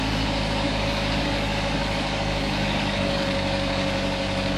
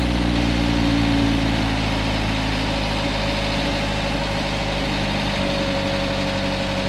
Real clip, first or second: second